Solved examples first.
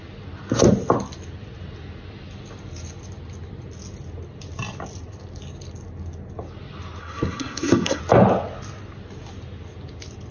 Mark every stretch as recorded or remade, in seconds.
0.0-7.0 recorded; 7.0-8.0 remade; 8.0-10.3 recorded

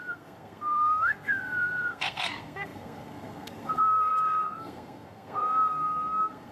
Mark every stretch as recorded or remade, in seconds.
0.0-6.5 remade

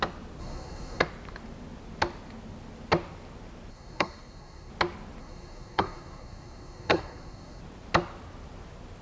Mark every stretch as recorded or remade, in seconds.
0.0-0.4 recorded; 0.4-1.0 remade; 1.0-3.7 recorded; 3.7-4.7 remade; 4.7-5.2 recorded; 5.2-7.6 remade; 7.6-9.0 recorded